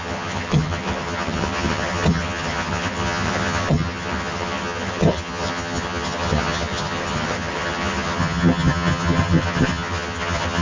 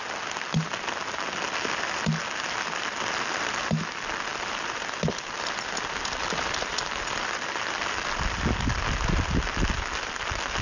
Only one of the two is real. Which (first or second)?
second